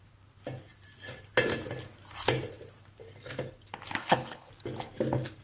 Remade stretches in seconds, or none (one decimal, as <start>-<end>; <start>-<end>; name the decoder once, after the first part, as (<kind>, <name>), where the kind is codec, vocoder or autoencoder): 4.0-4.5 (codec, HILCodec)